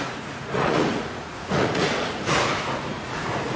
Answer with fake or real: fake